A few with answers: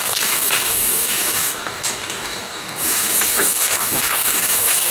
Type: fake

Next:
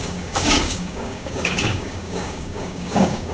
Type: fake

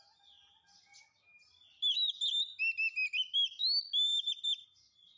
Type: real